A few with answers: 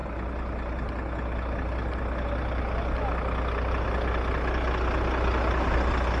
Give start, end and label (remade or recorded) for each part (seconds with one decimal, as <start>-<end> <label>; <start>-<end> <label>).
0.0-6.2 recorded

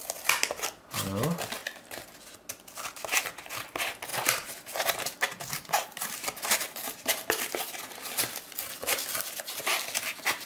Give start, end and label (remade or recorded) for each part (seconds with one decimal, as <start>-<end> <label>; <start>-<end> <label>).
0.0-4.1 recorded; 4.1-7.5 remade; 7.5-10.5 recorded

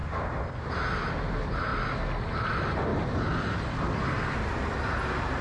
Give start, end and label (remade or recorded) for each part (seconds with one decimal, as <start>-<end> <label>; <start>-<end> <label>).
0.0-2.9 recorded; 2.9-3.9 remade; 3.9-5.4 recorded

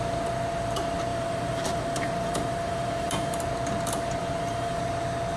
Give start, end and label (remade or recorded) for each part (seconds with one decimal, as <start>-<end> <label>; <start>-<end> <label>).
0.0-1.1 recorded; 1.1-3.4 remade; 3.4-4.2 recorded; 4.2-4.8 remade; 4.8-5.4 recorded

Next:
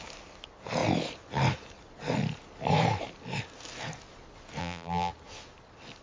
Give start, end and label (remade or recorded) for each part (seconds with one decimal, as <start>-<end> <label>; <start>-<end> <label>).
0.0-4.6 recorded; 4.6-5.1 remade; 5.1-6.0 recorded

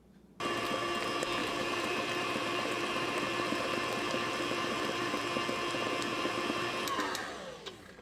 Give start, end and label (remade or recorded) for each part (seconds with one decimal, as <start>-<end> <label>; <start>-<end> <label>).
0.0-1.4 recorded; 1.4-5.2 remade; 5.2-6.1 recorded; 6.1-6.7 remade; 6.7-8.0 recorded